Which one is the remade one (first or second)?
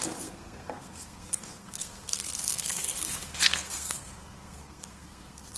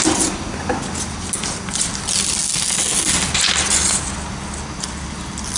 first